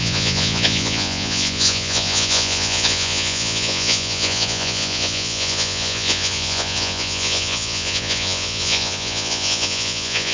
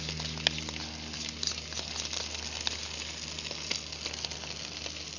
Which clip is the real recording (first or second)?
second